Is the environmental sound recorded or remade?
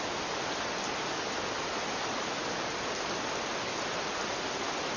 recorded